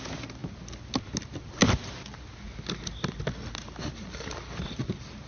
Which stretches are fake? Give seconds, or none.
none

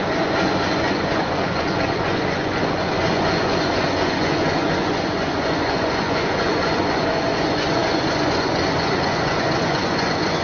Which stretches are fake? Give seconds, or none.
0.0-10.4 (vocoder, Vocos)

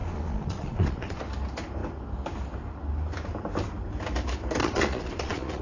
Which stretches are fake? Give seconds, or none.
0.0-1.2 (vocoder, Vocos); 4.6-5.6